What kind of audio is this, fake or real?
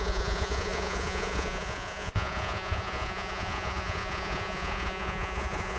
fake